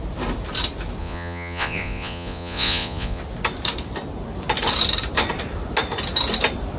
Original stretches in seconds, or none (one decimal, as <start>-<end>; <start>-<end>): 0.0-1.0; 3.2-6.8

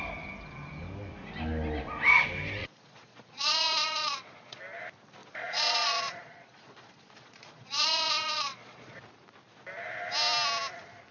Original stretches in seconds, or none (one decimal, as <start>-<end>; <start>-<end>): 0.0-2.6; 4.6-5.2; 9.0-11.1